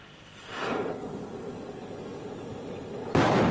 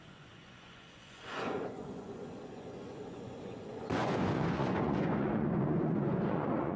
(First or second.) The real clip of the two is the first